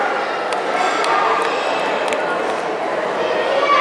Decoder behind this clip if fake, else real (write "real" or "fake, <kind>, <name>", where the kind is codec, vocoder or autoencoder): real